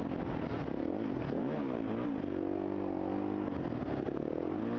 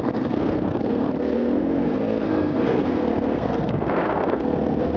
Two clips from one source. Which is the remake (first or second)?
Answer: second